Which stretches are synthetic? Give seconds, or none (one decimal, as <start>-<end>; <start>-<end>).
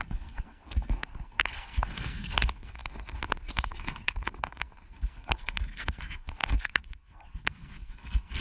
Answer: 0.0-8.4